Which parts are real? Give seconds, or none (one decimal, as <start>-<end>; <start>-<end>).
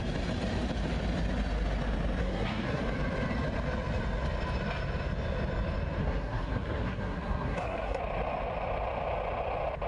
0.0-2.2; 2.8-6.0; 8.0-9.9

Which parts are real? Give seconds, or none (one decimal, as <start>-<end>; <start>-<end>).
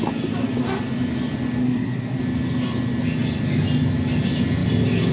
0.0-1.6; 2.2-5.1